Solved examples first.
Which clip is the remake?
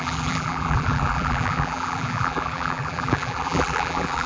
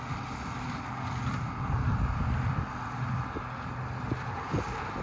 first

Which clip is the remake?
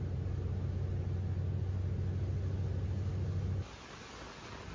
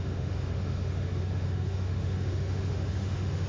second